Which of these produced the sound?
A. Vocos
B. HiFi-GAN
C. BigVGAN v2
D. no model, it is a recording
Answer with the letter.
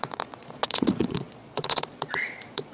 A